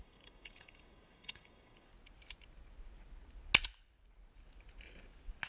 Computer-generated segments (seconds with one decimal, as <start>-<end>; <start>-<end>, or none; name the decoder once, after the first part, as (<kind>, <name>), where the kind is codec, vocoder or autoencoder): 0.0-1.9 (codec, DAC)